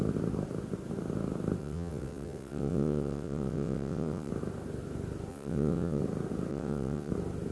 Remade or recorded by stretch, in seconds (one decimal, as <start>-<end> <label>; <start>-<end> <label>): 0.0-1.6 recorded; 1.6-4.3 remade; 4.3-5.3 recorded; 5.3-6.0 remade; 6.0-6.5 recorded; 6.5-7.1 remade; 7.1-7.5 recorded